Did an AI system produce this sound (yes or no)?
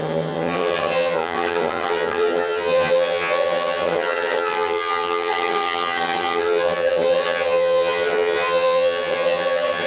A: yes